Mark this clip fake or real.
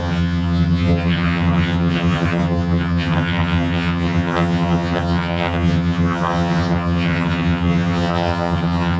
fake